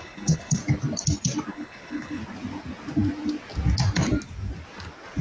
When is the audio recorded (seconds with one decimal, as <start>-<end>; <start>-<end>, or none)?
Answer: 0.6-1.5; 2.2-5.2